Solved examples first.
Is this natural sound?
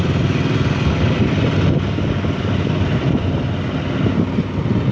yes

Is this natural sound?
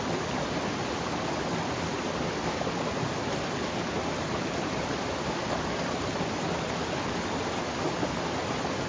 yes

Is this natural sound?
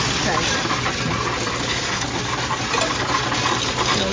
yes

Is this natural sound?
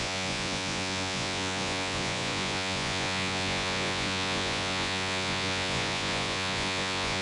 no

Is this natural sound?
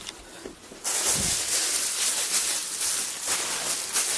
yes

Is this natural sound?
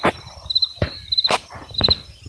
yes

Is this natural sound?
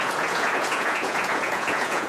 no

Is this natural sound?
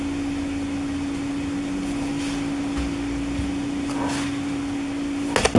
yes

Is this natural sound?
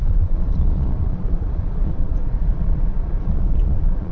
no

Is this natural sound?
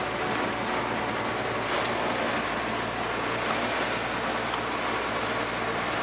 yes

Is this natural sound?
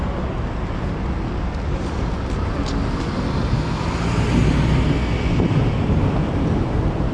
yes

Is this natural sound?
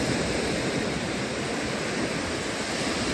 yes